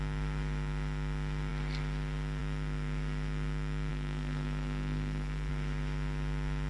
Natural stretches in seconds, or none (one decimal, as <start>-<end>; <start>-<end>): 0.0-3.9; 5.5-6.7

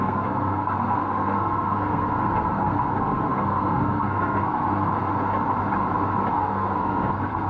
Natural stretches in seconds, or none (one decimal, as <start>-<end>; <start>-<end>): 4.9-6.3

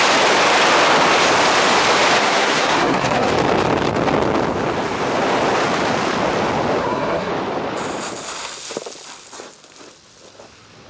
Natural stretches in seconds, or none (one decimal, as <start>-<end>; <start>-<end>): 0.0-2.2; 3.3-6.8; 7.3-10.9

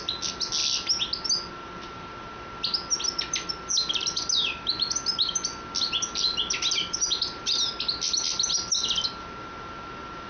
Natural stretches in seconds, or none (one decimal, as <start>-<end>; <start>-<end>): 0.0-10.3

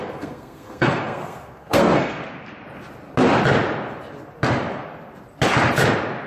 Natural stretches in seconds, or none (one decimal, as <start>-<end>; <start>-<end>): 2.2-6.3